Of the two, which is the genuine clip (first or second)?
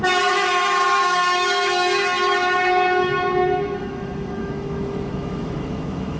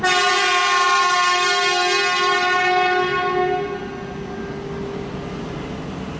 second